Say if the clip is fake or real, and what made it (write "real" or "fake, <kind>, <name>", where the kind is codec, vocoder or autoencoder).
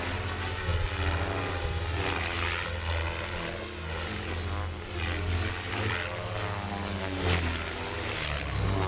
real